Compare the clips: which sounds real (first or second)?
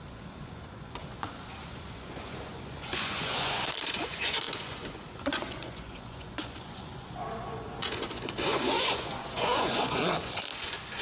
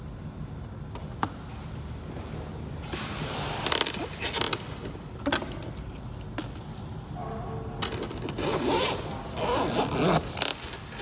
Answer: second